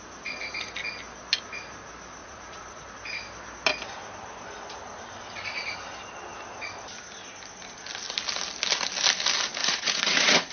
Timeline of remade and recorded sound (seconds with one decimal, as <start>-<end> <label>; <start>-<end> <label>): 0.0-2.2 recorded; 2.2-2.9 remade; 2.9-9.6 recorded; 9.6-10.5 remade

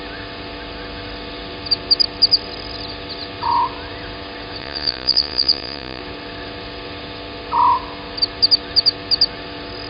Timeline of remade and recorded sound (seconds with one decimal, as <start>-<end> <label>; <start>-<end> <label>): 0.0-4.6 recorded; 4.6-6.0 remade; 6.0-9.9 recorded

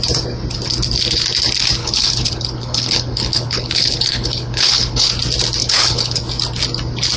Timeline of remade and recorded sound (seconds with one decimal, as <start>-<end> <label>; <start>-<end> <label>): 0.0-1.8 recorded; 1.8-5.1 remade; 5.1-5.6 recorded; 5.6-6.2 remade; 6.2-7.2 recorded

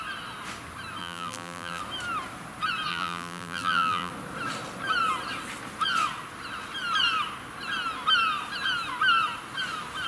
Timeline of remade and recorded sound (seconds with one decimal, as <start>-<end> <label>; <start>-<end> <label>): 0.0-1.0 recorded; 1.0-1.8 remade; 1.8-2.9 recorded; 2.9-4.1 remade; 4.1-10.1 recorded

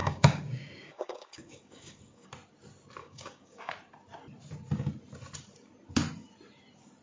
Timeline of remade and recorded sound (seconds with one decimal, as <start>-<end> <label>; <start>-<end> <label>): 0.0-2.3 remade; 2.3-3.0 recorded; 3.0-3.7 remade; 3.7-7.0 recorded

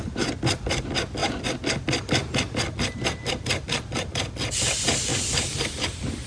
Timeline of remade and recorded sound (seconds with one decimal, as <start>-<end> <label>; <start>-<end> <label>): 0.0-6.3 recorded